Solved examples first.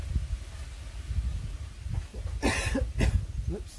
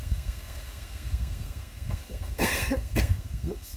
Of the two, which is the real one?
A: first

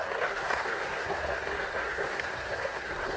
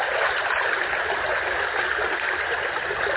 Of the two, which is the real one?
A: second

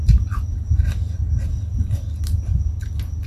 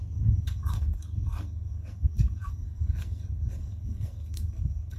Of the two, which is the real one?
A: first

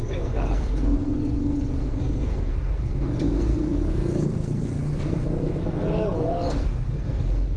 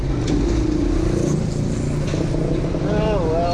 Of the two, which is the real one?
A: second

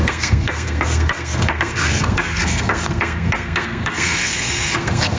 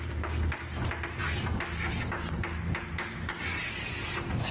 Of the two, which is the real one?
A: second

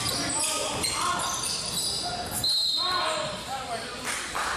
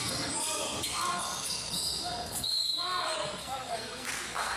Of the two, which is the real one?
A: first